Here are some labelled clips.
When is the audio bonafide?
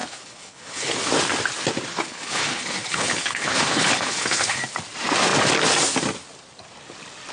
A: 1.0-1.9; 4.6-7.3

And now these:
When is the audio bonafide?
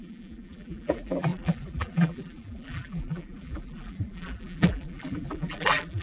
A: none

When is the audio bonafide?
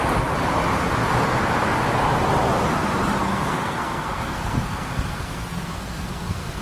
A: 0.0-3.2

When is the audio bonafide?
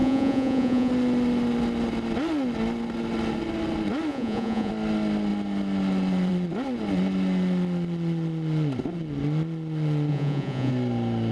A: 0.9-4.1; 4.7-10.1; 10.7-11.3